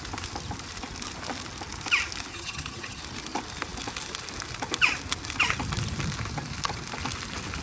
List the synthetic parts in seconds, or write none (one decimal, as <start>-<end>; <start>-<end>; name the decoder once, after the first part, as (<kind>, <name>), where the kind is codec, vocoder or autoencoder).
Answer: 2.3-3.0 (vocoder, HiFi-GAN)